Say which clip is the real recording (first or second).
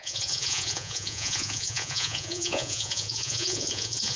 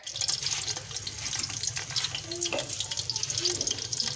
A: second